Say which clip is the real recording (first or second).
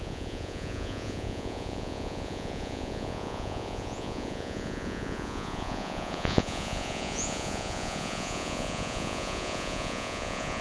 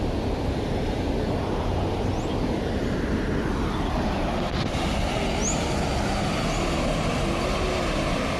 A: second